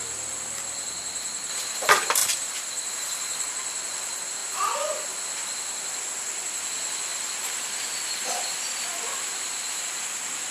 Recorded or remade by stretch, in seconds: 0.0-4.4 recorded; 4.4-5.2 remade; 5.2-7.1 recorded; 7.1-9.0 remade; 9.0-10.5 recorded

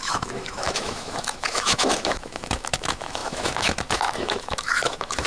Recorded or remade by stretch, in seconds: 0.0-5.3 remade

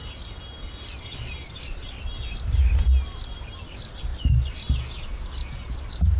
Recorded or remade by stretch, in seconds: 0.0-6.2 recorded